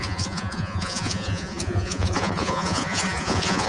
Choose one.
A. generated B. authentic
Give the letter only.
A